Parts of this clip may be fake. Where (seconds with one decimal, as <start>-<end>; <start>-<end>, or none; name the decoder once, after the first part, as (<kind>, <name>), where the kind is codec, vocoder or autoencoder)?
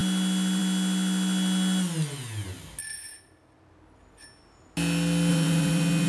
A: 5.3-6.1 (vocoder, Vocos)